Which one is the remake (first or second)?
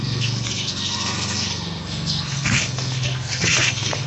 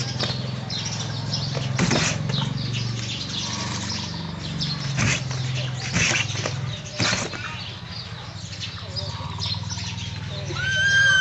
first